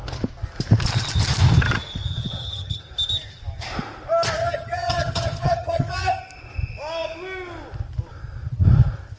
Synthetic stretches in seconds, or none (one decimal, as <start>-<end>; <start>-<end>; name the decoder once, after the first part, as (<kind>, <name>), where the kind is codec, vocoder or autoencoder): 2.1-2.8 (vocoder, HiFi-GAN); 4.4-6.2